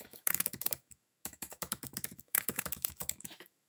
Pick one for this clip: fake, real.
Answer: fake